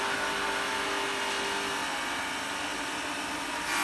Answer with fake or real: real